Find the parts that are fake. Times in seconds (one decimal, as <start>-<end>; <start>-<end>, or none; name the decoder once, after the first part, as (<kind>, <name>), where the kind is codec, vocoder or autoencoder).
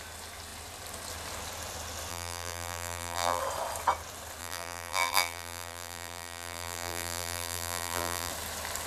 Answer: 2.1-3.4 (vocoder, BigVGAN v2); 4.4-8.3